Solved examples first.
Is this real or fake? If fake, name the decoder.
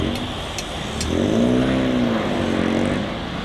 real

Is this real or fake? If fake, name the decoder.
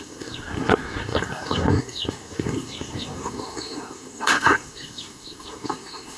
fake, codec, SNAC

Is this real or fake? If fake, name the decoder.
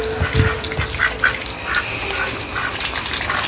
real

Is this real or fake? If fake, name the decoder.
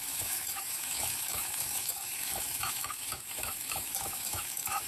fake, autoencoder, DAC-VAE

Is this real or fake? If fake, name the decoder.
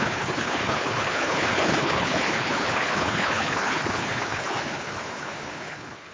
fake, codec, HILCodec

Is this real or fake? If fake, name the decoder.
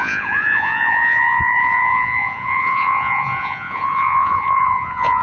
fake, vocoder, Vocos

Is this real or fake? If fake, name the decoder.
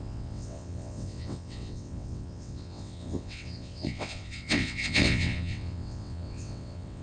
fake, vocoder, WaveNeXt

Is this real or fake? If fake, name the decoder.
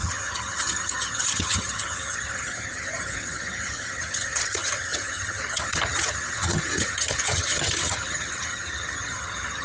fake, vocoder, HiFi-GAN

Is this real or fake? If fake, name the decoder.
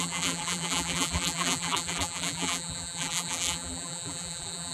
fake, vocoder, BigVGAN v2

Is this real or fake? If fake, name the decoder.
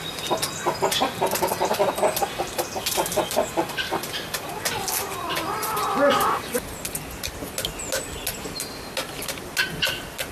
real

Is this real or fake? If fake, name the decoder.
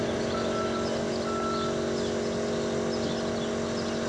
real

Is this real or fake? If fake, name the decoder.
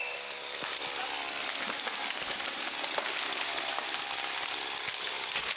real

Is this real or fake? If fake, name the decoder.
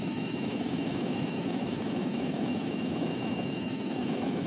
fake, autoencoder, DAC-VAE